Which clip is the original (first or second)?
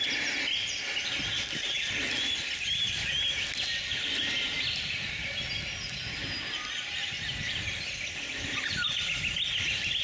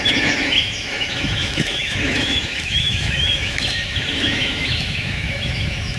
first